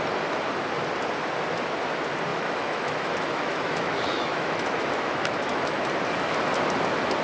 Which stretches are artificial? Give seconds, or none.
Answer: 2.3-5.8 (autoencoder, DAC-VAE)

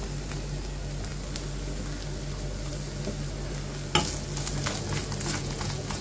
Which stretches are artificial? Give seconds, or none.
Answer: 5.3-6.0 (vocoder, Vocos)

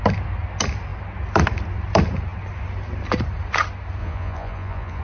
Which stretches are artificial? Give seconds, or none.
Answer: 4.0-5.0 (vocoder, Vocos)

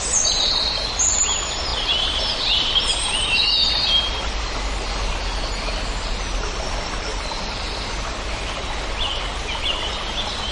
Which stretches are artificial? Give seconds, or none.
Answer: none